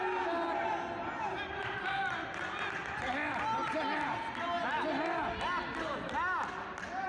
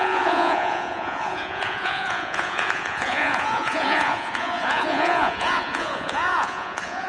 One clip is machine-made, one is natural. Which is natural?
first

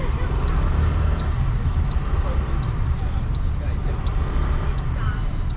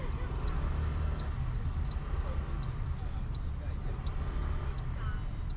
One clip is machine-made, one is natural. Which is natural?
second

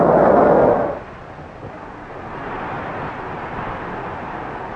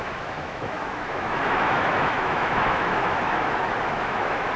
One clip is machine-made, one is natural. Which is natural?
first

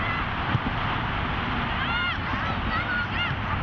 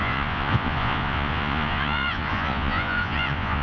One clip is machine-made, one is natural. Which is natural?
first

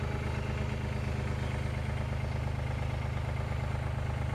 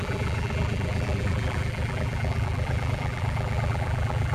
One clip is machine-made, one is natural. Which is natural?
first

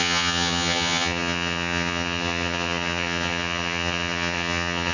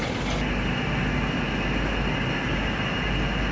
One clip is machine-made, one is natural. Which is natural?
second